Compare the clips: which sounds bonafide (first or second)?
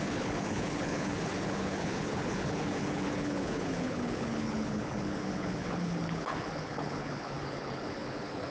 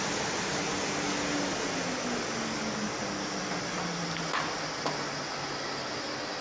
second